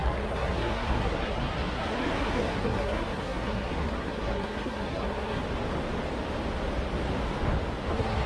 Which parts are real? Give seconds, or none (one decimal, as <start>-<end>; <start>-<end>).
5.4-7.9